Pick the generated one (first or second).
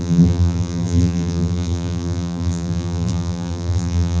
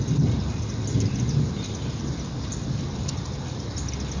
first